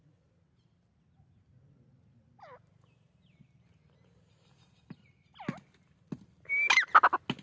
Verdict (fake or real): real